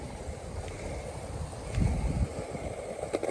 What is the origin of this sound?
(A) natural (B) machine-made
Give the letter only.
A